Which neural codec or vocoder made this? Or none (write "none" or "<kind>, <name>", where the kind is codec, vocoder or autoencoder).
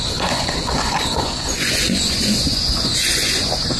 vocoder, Vocos